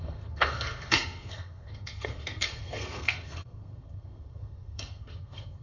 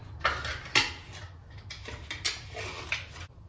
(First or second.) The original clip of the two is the second